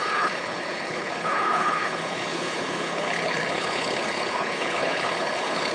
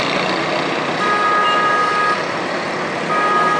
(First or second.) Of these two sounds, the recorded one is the second